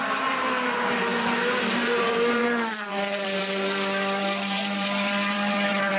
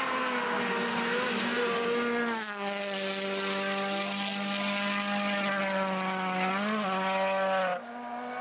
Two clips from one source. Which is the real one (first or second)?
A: second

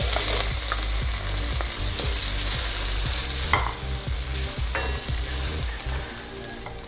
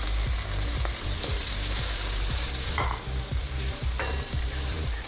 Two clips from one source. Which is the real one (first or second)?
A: first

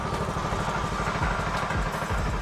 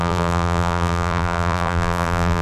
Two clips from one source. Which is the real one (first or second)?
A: first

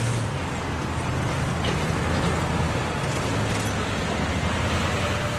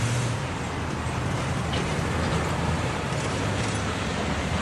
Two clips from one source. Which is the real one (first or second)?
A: first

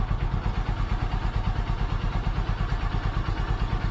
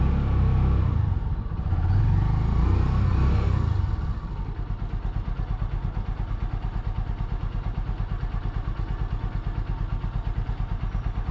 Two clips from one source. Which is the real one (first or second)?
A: second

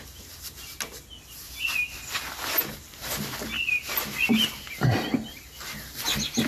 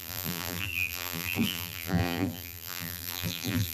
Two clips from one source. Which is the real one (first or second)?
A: first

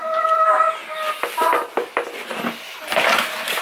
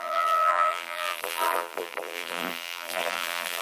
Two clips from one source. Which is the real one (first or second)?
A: first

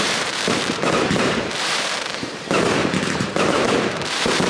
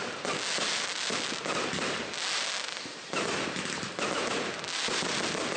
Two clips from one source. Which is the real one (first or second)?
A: second